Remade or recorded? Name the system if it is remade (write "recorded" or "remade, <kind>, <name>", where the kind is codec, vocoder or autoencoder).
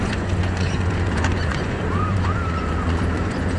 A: remade, vocoder, Vocos